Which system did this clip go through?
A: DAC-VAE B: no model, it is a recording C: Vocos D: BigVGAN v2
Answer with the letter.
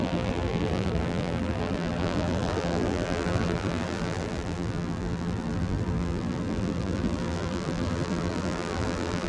D